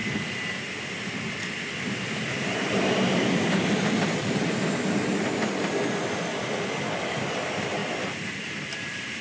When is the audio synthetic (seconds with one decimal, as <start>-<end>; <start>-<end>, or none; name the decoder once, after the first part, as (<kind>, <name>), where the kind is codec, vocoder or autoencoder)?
1.4-9.2 (vocoder, BigVGAN v2)